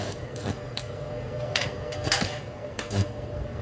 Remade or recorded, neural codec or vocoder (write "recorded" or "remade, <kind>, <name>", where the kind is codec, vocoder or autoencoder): remade, codec, SNAC